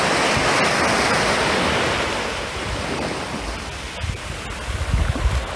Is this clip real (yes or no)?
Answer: yes